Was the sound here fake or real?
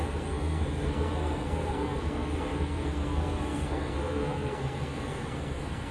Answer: fake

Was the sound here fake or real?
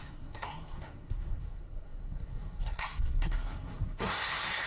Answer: fake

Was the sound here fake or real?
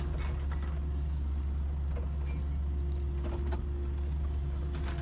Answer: real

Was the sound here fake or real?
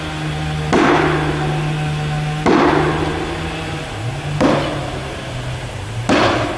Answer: real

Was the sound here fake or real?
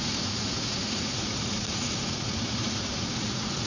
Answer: fake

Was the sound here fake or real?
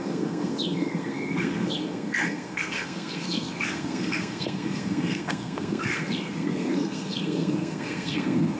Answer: fake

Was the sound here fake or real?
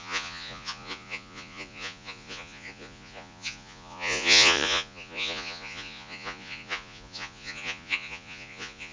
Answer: fake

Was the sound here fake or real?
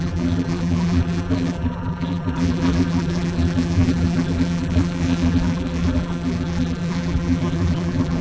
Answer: fake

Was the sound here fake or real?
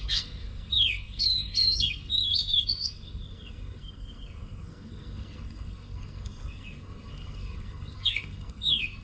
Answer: fake